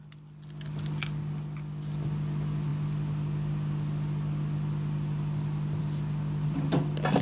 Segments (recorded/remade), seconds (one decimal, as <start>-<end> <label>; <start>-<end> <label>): 0.0-7.2 recorded